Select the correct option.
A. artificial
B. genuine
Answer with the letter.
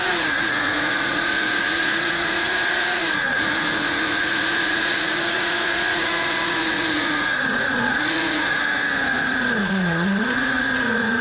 A